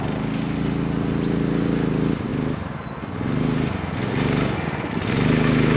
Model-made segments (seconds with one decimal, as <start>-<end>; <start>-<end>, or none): none